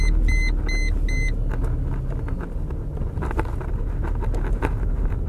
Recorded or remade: recorded